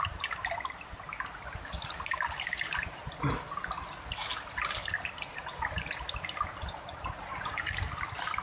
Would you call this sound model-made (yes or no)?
no